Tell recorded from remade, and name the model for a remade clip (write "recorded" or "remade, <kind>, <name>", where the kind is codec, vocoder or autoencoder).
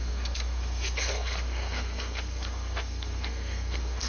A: remade, codec, SNAC